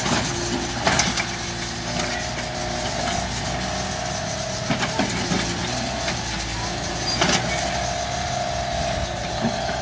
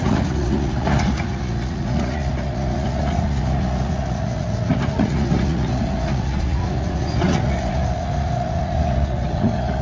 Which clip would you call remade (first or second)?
second